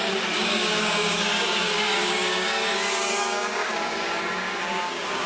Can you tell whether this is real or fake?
fake